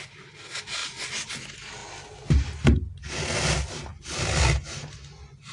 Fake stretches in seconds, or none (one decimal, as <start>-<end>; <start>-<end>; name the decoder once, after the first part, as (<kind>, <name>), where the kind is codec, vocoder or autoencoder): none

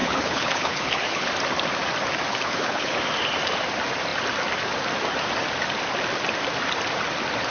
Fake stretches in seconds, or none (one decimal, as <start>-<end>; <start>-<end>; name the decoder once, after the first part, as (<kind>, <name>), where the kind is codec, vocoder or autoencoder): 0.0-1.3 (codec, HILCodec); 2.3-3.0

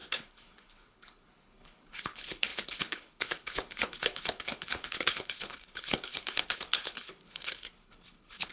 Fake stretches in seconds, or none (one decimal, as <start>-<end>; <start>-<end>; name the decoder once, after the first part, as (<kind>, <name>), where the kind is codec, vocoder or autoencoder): 0.0-8.5 (codec, HILCodec)

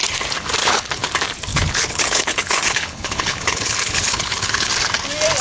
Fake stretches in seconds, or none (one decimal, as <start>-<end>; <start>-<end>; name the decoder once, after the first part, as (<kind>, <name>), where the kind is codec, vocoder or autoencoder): 0.6-1.1 (codec, HILCodec); 1.5-4.7

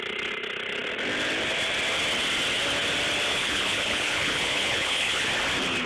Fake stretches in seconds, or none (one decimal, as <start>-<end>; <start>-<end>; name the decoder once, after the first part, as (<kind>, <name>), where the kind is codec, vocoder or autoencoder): 3.3-5.3 (codec, HILCodec)

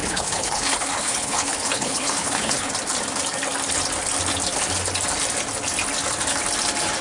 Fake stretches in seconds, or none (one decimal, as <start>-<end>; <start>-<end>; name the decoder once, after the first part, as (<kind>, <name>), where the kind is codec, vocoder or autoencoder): 0.0-2.7 (codec, HILCodec)

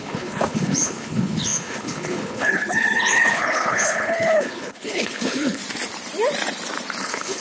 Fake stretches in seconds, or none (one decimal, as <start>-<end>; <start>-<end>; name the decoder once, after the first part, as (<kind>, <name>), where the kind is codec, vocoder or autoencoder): 0.0-5.6 (codec, HILCodec); 7.0-7.4

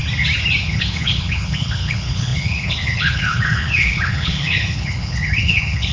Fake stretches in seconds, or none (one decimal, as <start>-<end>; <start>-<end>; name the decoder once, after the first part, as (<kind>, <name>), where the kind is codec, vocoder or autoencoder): 0.6-5.9 (codec, HILCodec)